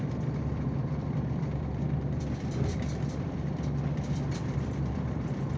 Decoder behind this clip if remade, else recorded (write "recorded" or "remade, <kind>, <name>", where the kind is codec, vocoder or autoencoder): remade, vocoder, BigVGAN v2